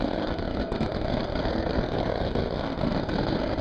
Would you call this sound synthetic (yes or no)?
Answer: yes